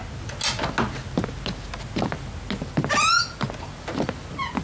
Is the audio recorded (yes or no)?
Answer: yes